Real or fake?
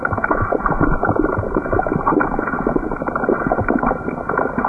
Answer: real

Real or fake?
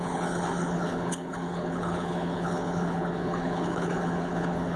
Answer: fake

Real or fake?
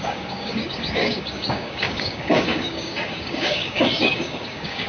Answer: fake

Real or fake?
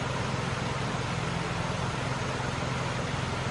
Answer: real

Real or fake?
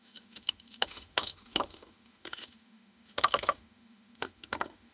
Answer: fake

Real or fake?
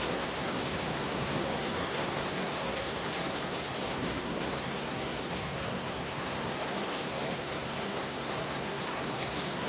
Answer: fake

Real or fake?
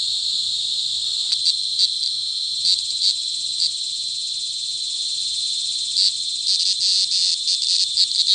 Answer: real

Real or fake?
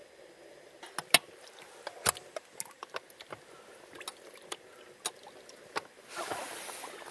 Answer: real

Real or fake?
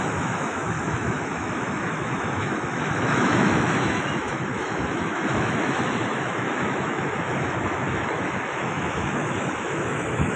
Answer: fake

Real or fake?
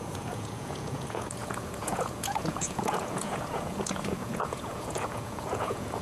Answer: fake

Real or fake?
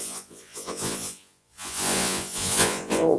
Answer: fake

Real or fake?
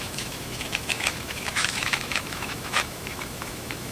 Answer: fake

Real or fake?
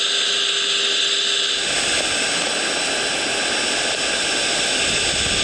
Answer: real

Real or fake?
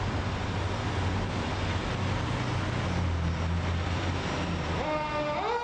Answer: real